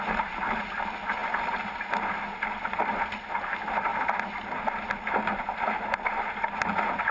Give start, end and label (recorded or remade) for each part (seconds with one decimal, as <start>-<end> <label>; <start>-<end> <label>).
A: 0.0-7.1 recorded